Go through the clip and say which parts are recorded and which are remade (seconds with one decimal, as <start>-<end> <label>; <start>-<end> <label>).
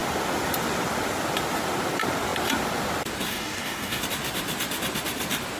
0.0-3.3 recorded; 3.3-4.0 remade; 4.0-5.6 recorded